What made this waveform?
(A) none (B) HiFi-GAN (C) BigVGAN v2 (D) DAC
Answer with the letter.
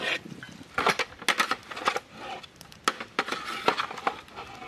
A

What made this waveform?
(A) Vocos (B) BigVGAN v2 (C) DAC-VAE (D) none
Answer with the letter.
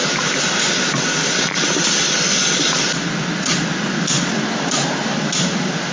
D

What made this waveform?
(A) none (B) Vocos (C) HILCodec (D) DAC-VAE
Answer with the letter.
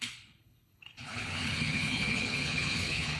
C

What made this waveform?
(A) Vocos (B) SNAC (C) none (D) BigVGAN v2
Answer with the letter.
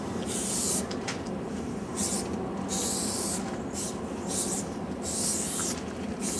C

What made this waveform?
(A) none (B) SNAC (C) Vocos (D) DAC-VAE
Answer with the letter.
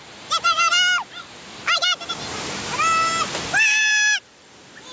A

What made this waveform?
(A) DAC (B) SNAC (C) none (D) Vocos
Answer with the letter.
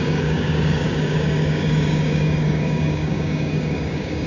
A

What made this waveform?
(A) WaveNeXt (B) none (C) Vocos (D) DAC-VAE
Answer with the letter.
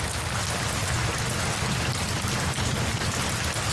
B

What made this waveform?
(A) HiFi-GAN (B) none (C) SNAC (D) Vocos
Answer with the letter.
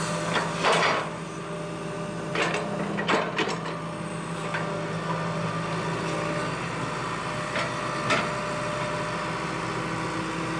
B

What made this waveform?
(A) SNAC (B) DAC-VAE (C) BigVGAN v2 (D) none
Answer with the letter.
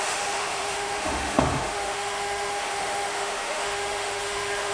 B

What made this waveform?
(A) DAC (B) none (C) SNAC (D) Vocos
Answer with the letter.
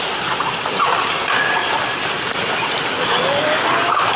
B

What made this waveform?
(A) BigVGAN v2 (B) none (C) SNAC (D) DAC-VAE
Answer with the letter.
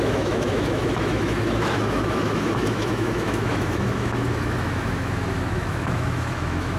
D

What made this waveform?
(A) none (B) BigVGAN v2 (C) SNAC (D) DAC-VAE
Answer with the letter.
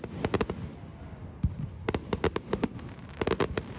A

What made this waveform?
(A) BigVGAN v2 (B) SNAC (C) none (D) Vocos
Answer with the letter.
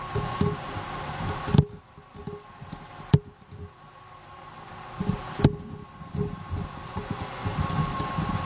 C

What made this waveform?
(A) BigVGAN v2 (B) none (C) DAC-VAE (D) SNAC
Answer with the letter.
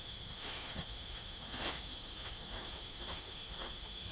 C